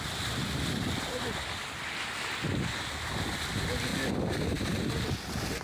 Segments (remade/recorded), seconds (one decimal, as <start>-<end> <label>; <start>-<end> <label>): 0.0-5.6 recorded

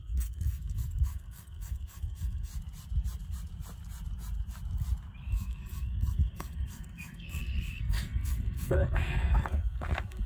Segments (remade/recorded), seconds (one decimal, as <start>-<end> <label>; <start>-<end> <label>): 0.0-2.5 remade; 2.5-5.3 recorded; 5.3-10.3 remade

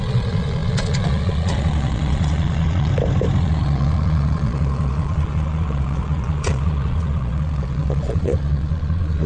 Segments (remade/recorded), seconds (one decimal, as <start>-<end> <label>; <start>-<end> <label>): 0.0-2.9 remade; 2.9-3.4 recorded; 3.4-9.3 remade

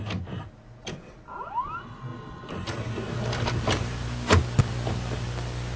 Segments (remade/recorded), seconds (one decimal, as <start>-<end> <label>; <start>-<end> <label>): 0.0-5.8 recorded

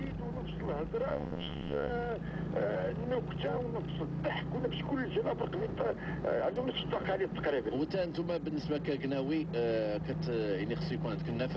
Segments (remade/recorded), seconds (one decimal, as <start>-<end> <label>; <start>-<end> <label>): 0.0-1.1 recorded; 1.1-1.9 remade; 1.9-11.6 recorded

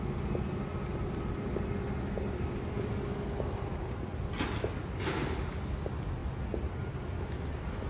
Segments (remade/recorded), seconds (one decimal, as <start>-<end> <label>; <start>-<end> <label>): 0.0-7.9 recorded

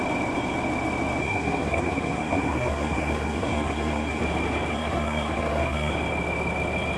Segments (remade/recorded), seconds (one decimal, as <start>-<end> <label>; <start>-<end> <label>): 0.0-1.2 recorded; 1.2-4.2 remade; 4.2-4.7 recorded; 4.7-5.9 remade; 5.9-7.0 recorded